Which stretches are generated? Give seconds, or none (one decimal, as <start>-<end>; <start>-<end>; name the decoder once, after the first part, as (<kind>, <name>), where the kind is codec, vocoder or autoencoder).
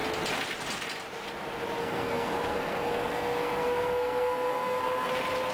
1.8-5.1 (codec, SNAC)